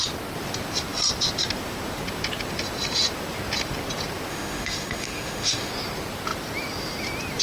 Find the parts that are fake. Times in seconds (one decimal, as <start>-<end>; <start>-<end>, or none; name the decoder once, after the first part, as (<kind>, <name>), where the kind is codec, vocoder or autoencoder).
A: 4.3-5.7 (autoencoder, DAC-VAE)